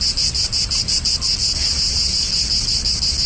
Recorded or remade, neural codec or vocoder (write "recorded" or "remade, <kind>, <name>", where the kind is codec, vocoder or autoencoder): recorded